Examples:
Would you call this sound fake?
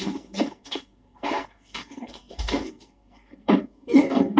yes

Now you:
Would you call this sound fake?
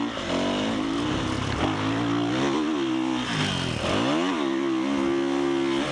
no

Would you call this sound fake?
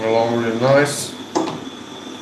no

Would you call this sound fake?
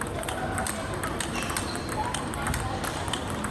no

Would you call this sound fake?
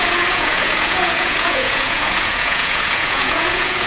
yes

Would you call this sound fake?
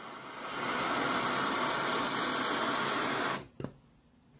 no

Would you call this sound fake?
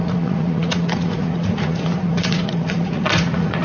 yes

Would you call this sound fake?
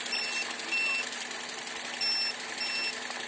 no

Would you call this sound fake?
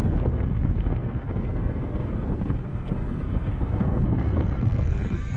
yes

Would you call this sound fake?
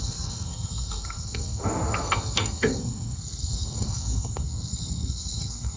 yes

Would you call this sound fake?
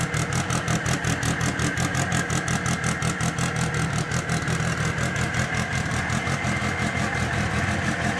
no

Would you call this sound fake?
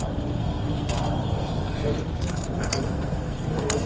yes